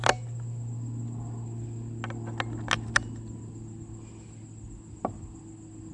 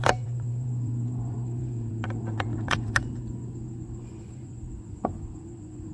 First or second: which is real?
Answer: first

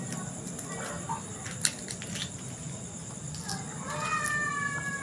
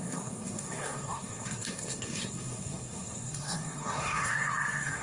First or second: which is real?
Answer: first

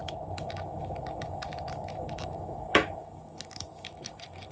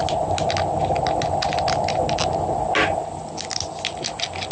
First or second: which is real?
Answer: second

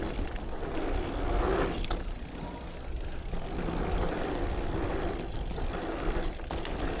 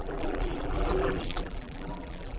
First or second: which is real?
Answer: first